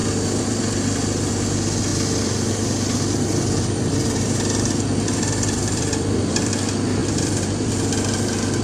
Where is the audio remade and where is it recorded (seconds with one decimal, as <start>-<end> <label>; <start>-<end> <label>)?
0.0-0.6 remade; 0.6-1.9 recorded; 1.9-6.5 remade; 6.5-7.0 recorded; 7.0-7.7 remade; 7.7-8.6 recorded